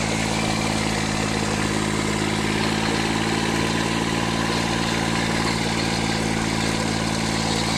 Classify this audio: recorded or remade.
recorded